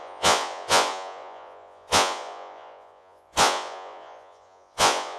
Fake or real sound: fake